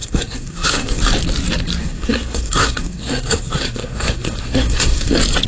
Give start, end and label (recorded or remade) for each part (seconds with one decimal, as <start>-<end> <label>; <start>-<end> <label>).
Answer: 0.0-1.0 remade; 1.0-1.8 recorded; 1.8-5.1 remade; 5.1-5.5 recorded